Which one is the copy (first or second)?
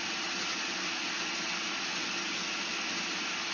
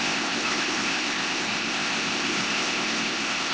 second